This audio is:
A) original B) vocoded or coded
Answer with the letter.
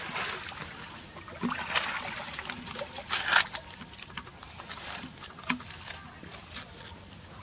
A